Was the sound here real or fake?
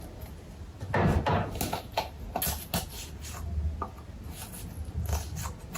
real